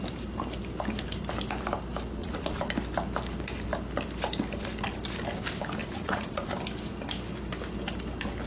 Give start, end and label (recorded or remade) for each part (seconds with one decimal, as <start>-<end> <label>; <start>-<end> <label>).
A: 0.0-2.2 recorded; 2.2-2.7 remade; 2.7-5.8 recorded; 5.8-6.5 remade; 6.5-8.5 recorded